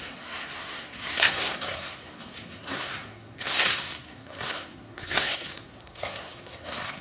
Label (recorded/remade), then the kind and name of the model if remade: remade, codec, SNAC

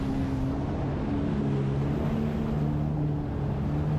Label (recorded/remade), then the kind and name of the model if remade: recorded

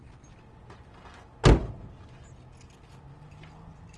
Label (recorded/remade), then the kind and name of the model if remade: recorded